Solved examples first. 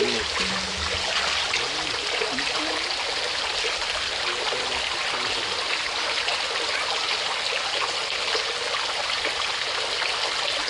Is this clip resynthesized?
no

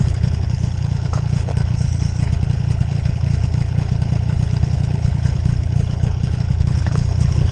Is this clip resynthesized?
yes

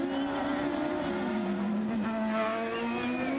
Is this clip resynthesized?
no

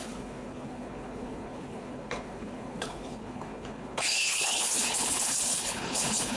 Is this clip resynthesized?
yes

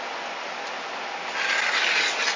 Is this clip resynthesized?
no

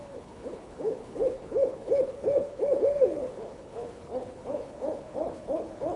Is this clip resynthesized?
yes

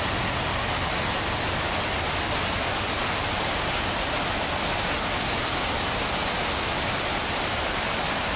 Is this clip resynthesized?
no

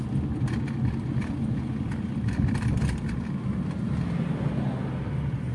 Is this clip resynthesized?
no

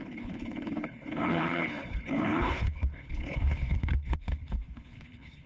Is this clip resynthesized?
yes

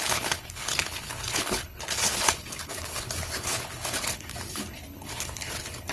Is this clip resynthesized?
yes